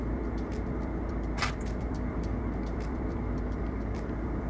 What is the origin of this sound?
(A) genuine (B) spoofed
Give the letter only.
B